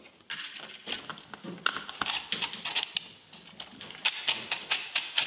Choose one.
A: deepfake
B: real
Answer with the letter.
B